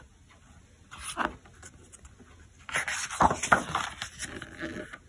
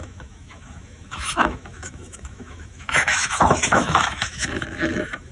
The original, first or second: first